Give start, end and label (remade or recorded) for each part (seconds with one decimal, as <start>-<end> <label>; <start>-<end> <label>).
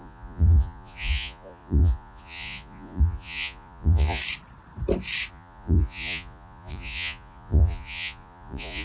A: 0.0-4.2 remade; 4.2-5.3 recorded; 5.3-8.8 remade